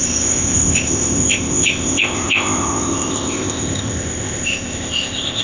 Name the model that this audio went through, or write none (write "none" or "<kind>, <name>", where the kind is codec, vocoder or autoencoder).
codec, ZipCodec